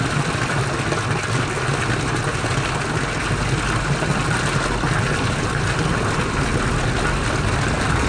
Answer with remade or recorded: recorded